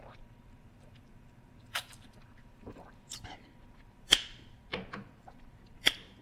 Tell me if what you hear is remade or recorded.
remade